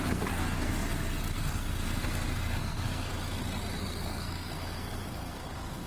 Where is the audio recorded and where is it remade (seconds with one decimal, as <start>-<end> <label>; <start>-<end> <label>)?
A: 0.0-3.1 remade; 3.1-3.8 recorded; 3.8-5.9 remade